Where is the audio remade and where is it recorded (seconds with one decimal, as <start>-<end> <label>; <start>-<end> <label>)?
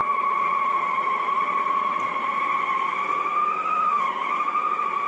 0.0-2.4 remade; 2.4-5.1 recorded